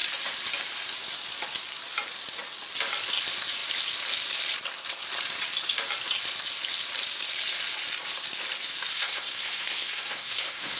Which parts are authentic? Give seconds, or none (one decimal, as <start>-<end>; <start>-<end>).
0.0-8.9